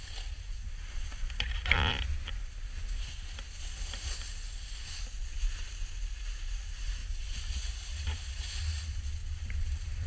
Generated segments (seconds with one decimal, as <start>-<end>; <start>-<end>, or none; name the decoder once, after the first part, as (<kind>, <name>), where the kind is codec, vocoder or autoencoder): none